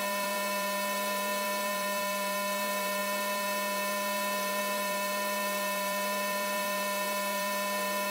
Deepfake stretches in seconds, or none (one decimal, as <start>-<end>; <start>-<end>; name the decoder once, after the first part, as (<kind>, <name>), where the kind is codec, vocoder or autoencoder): 0.0-8.1 (vocoder, BigVGAN v2)